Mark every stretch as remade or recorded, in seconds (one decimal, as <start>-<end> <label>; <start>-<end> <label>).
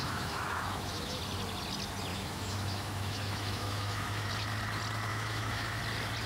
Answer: 0.0-1.2 remade; 1.2-2.1 recorded; 2.1-4.3 remade; 4.3-5.1 recorded; 5.1-5.8 remade; 5.8-6.3 recorded